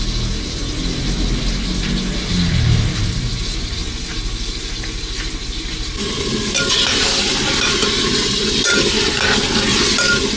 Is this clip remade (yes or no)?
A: no